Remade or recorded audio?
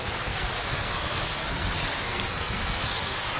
remade